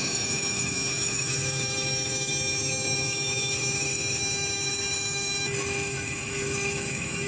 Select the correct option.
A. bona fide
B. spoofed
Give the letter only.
B